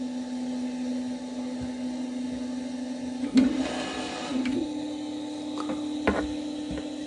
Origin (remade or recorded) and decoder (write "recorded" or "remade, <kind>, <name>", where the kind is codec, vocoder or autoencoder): recorded